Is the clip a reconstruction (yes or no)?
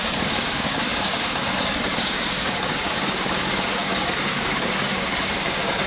yes